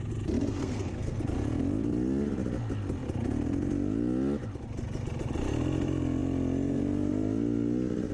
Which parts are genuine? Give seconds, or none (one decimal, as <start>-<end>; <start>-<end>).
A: 0.0-0.6; 1.2-8.1